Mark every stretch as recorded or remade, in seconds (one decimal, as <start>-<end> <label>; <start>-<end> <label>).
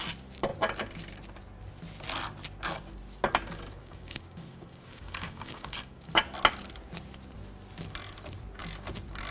0.0-3.8 recorded; 3.8-6.1 remade; 6.1-9.3 recorded